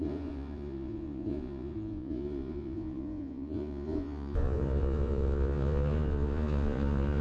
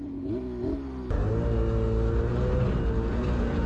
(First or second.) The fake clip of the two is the first